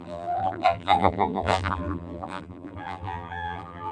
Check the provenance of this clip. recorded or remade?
remade